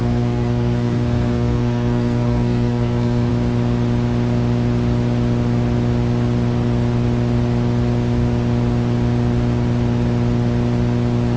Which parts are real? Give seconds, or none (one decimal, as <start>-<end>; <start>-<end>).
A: 3.3-11.4